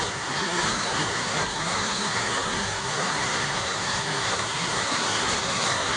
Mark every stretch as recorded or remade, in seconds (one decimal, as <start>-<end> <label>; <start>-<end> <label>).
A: 0.0-6.0 remade